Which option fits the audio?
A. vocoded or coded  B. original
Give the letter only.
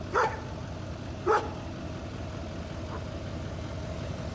B